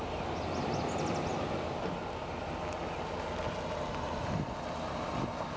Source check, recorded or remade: recorded